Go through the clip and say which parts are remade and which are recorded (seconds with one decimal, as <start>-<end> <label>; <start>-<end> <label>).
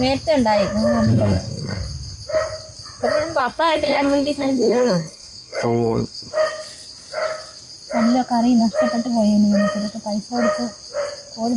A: 0.0-1.1 recorded; 1.1-1.8 remade; 1.8-3.4 recorded; 3.4-6.3 remade; 6.3-11.6 recorded